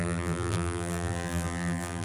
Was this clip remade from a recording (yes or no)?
yes